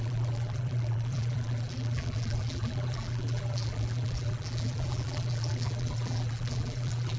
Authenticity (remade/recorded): remade